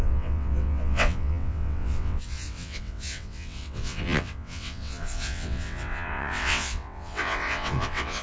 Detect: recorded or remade remade